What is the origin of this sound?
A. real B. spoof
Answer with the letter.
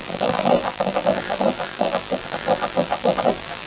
B